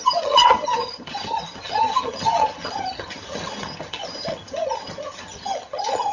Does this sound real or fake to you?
fake